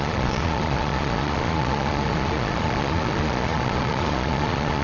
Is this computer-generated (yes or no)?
yes